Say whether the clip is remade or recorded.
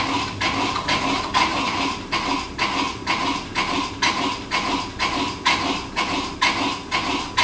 recorded